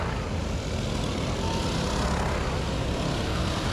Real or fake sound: real